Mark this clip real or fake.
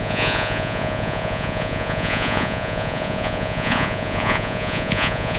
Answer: fake